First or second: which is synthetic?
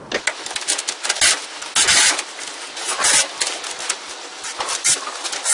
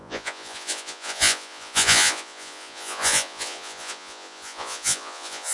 second